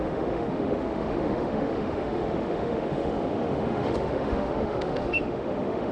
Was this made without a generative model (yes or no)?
no